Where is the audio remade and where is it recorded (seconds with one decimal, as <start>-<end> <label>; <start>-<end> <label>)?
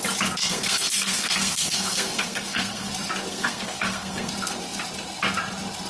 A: 0.0-0.4 recorded; 0.4-2.9 remade; 2.9-3.3 recorded; 3.3-4.3 remade; 4.3-5.9 recorded